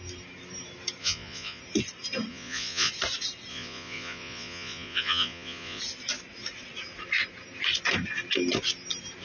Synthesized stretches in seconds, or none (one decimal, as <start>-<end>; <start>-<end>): 1.0-1.6; 2.3-2.9; 3.5-5.8